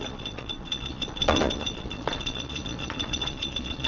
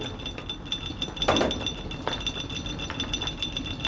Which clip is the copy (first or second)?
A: first